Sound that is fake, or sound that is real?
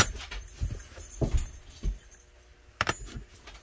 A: real